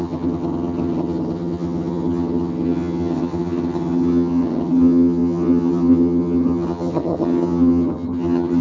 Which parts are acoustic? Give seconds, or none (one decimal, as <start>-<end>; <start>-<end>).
none